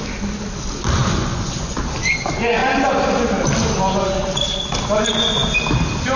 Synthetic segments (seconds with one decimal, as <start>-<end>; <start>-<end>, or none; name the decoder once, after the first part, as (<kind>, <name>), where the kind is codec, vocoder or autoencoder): 1.1-1.8 (vocoder, Vocos)